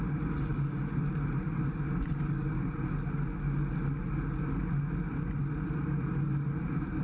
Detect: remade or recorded recorded